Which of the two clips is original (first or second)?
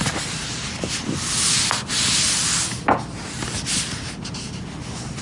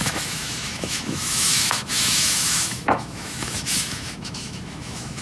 first